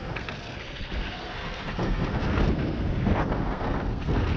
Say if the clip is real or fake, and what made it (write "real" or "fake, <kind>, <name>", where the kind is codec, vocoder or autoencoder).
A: fake, codec, SNAC